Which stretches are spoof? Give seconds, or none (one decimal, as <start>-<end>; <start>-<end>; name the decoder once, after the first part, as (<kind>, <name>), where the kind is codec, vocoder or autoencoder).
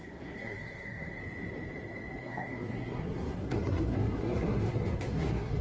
0.0-1.2 (codec, SNAC); 2.2-5.6